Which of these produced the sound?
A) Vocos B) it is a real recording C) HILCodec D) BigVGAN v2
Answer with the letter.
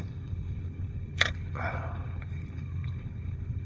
C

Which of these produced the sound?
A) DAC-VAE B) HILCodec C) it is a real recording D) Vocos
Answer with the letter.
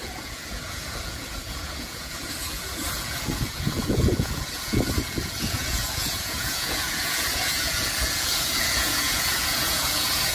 D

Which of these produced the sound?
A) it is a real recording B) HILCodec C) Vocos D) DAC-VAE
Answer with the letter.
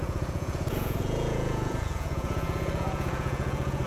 C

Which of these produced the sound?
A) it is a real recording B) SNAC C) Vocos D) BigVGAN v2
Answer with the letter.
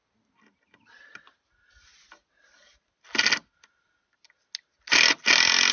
A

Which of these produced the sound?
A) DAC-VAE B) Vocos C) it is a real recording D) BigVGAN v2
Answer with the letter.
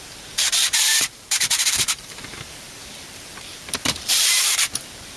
D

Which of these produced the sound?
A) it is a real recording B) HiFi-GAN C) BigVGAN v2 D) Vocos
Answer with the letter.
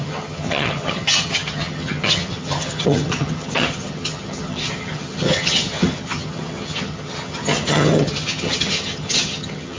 B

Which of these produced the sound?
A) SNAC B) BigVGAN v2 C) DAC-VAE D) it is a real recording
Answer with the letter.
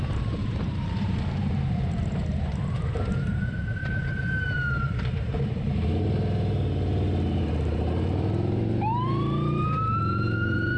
B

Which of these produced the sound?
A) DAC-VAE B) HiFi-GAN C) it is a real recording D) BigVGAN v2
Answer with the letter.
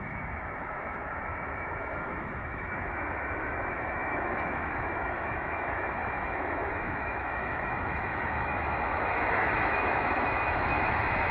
A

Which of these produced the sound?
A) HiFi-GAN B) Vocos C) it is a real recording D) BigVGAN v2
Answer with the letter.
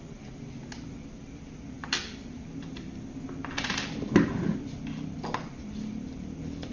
C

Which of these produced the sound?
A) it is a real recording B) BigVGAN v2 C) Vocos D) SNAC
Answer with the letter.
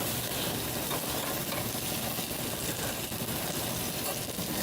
A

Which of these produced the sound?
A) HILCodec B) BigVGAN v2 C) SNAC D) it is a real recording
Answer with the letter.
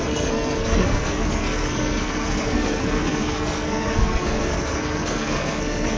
C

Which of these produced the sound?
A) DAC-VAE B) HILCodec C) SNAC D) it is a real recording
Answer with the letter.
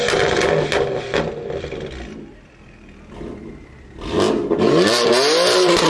D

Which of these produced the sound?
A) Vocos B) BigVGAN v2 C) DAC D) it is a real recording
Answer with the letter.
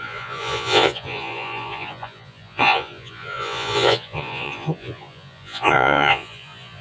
A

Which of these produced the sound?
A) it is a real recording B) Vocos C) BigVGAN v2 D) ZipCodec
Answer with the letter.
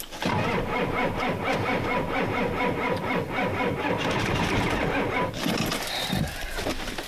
C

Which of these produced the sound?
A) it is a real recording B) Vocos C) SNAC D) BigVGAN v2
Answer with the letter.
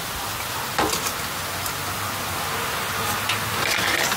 A